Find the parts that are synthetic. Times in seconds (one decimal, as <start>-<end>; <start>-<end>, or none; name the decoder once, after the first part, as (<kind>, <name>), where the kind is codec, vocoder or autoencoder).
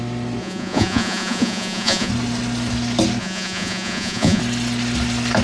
0.4-2.1 (vocoder, Vocos); 3.2-4.4